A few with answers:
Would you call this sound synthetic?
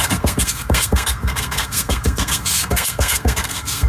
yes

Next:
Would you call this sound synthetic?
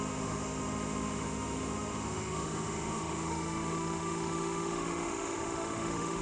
yes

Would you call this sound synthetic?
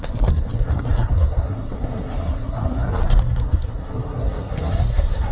yes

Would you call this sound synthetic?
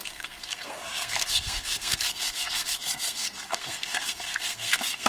yes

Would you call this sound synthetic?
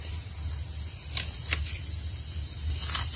no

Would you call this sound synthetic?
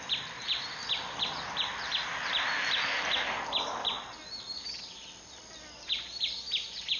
no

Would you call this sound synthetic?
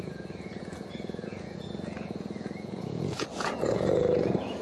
yes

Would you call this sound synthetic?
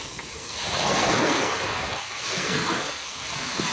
yes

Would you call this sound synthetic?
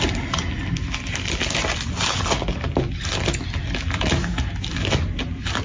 no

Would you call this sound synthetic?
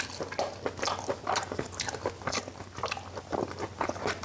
no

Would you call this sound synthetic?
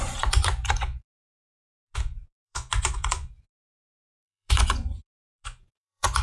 yes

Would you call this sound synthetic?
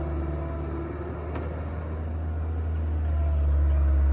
no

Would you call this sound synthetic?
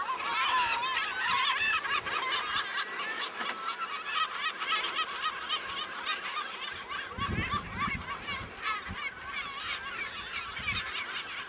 no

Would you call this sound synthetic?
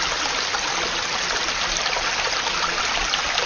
no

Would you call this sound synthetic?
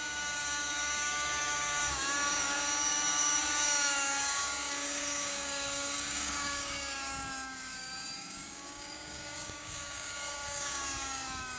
yes